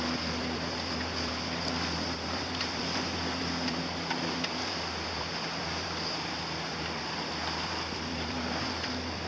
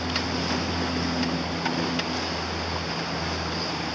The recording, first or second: second